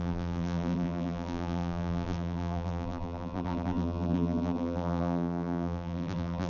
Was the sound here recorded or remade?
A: remade